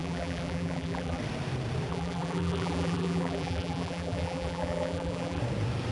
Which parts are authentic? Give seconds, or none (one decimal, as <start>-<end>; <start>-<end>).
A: 1.2-1.9; 5.4-5.9